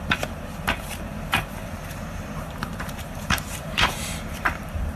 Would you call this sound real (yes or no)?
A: no